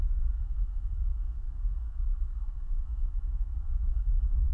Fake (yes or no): yes